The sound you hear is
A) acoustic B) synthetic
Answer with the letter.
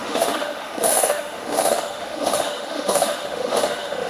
B